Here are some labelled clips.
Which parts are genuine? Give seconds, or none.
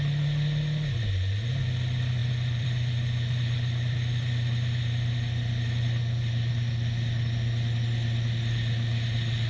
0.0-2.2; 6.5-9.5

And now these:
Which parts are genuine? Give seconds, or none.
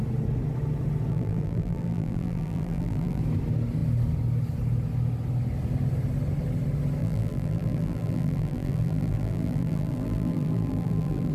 0.0-1.1; 3.2-7.0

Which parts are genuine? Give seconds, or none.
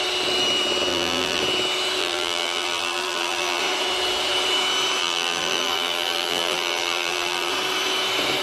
0.0-0.9; 1.4-2.0; 3.6-5.0; 7.5-8.4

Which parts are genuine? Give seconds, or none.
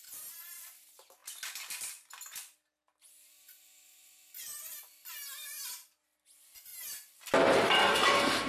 0.0-8.5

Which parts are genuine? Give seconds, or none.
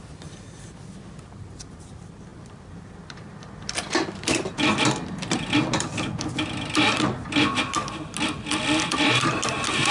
0.0-2.3; 7.0-9.9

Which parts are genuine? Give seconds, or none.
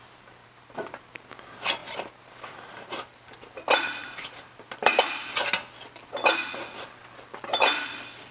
0.0-0.4; 1.0-1.8; 3.3-4.0; 5.0-8.3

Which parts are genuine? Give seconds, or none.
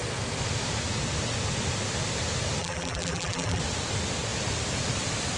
0.0-2.6; 3.6-5.4